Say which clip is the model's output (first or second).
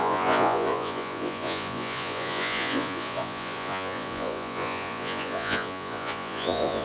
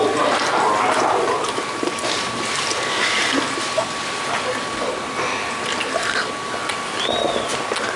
first